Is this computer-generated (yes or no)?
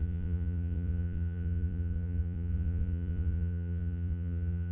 yes